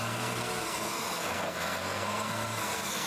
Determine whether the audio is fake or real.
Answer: fake